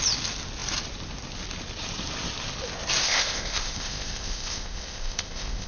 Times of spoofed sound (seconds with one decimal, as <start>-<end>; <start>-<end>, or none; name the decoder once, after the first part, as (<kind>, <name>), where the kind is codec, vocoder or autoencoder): 3.0-5.7 (codec, ZipCodec)